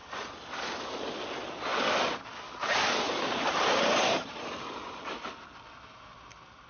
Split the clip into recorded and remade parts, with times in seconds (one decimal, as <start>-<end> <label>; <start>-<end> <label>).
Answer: 0.0-2.6 recorded; 2.6-5.0 remade; 5.0-6.7 recorded